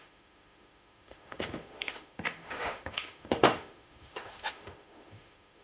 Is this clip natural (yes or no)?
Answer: no